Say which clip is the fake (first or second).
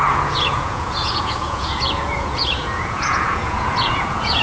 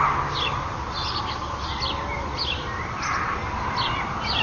first